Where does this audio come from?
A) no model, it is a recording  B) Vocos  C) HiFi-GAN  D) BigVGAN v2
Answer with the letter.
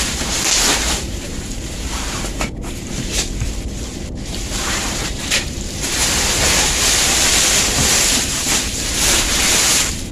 D